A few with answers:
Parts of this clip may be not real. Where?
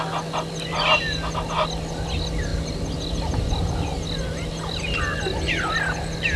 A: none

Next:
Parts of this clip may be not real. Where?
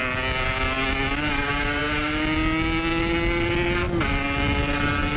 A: none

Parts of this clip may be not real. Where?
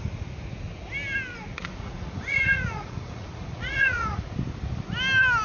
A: 1.5-4.2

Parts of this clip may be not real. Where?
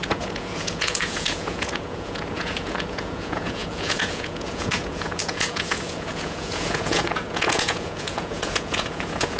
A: 0.0-9.4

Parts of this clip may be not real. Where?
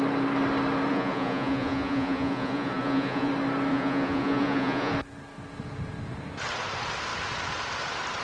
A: 0.9-3.3; 3.7-4.9